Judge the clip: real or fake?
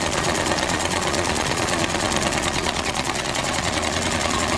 fake